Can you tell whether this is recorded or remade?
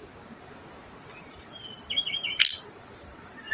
recorded